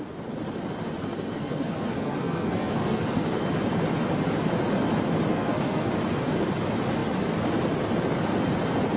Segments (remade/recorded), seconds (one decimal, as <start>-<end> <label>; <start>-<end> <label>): 0.0-1.0 recorded; 1.0-3.4 remade; 3.4-5.3 recorded; 5.3-5.9 remade; 5.9-9.0 recorded